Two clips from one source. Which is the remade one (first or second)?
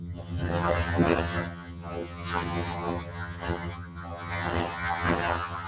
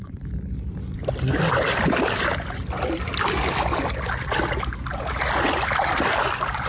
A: first